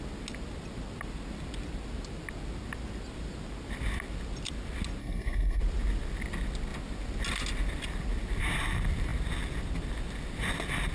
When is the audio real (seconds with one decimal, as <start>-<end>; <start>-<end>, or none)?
0.0-5.0; 5.6-10.9